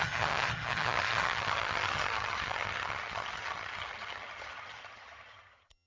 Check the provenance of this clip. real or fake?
fake